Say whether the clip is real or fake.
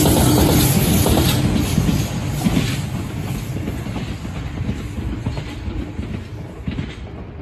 real